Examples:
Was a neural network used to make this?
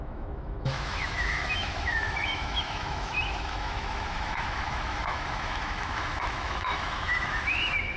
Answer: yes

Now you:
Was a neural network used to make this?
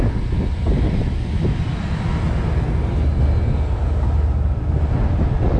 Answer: no